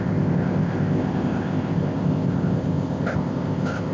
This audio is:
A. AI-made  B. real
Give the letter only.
A